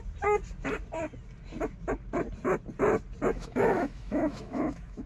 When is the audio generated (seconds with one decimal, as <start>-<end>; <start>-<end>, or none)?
3.3-5.1